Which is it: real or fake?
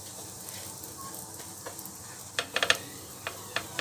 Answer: fake